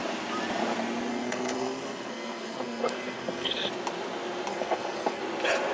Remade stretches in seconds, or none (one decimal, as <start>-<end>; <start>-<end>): 1.1-3.7; 4.5-5.2